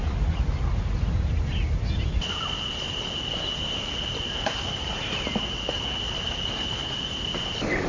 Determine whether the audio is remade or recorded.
recorded